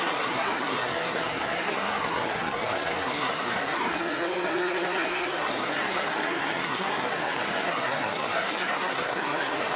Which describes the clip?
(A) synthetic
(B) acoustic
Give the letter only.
A